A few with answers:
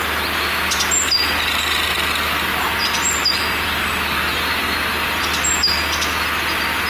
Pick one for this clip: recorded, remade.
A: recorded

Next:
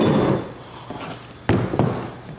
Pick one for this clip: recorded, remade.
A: recorded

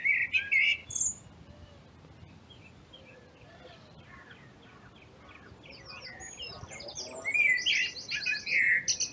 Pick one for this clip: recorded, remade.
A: recorded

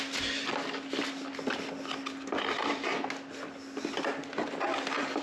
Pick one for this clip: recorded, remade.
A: recorded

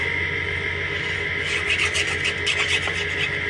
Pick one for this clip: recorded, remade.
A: recorded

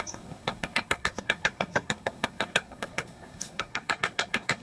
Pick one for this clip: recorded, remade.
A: remade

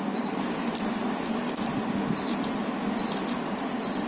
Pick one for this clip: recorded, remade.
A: recorded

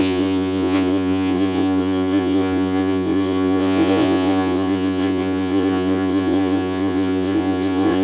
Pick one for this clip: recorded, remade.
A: remade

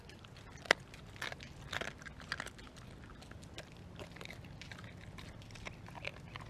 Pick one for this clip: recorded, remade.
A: recorded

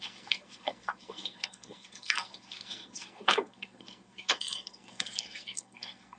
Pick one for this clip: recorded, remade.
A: remade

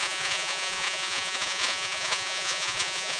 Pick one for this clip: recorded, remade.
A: remade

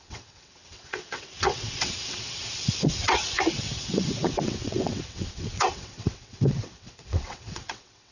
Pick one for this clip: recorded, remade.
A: remade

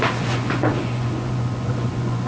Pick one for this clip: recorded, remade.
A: remade